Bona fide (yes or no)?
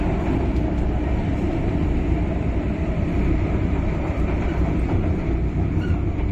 no